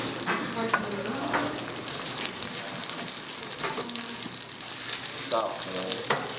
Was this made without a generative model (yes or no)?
yes